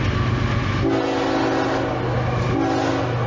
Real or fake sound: real